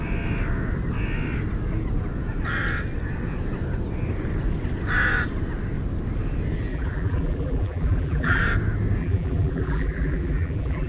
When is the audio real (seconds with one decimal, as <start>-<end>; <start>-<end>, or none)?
0.0-6.7; 8.4-9.0